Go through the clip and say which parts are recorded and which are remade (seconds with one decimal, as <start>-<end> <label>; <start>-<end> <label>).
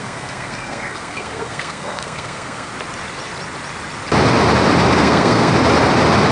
0.0-2.7 remade; 2.7-5.0 recorded; 5.0-5.5 remade; 5.5-6.3 recorded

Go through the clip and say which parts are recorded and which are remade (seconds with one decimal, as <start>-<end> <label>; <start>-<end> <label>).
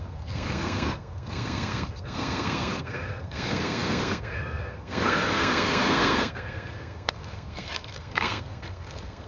0.0-9.3 remade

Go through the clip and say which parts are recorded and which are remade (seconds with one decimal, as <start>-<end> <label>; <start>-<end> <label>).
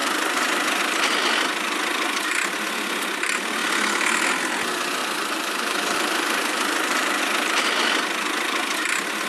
0.0-0.8 remade; 0.8-5.0 recorded; 5.0-7.2 remade; 7.2-9.3 recorded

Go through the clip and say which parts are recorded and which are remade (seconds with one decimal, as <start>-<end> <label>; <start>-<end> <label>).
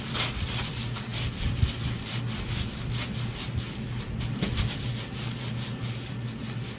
0.0-6.8 recorded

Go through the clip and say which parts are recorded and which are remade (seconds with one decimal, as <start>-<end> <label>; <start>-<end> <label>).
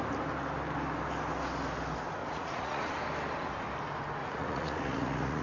0.0-2.2 recorded; 2.2-2.9 remade; 2.9-4.2 recorded; 4.2-5.4 remade